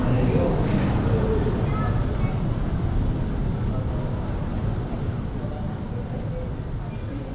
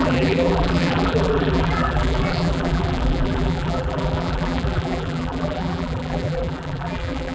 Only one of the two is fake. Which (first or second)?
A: second